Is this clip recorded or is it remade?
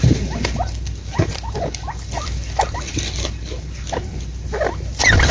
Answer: remade